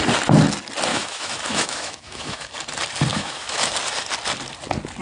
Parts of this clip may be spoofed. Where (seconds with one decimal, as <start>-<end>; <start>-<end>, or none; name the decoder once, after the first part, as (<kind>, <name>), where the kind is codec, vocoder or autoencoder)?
0.9-2.5 (autoencoder, DAC-VAE); 3.1-3.7